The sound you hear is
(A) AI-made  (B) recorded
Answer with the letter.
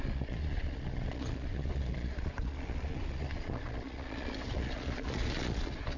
A